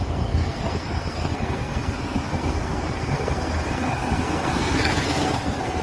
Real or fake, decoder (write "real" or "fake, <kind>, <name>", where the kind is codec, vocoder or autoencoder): fake, codec, SNAC